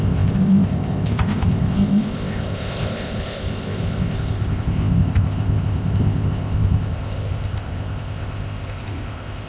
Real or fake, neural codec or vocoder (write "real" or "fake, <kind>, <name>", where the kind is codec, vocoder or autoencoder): fake, codec, ZipCodec